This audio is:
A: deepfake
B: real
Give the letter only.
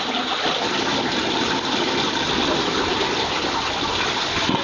B